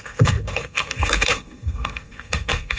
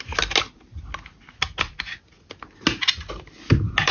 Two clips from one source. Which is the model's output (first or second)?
first